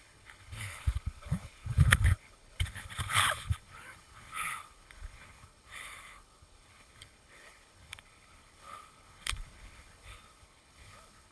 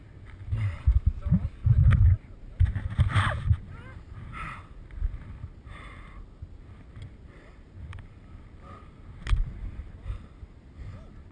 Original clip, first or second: second